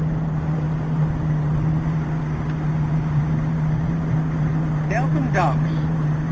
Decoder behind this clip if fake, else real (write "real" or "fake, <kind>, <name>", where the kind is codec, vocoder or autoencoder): real